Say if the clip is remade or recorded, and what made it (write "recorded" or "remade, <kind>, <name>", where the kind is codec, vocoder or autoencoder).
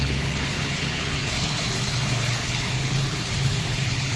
remade, codec, HILCodec